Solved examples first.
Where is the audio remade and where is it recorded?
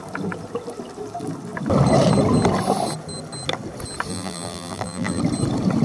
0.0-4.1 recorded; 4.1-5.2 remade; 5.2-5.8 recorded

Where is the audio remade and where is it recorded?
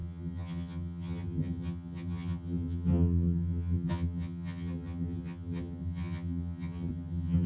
0.0-7.5 remade